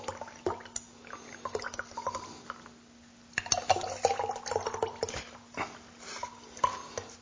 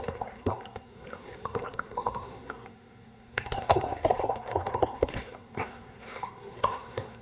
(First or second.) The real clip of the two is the first